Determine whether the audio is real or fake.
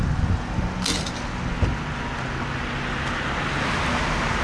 real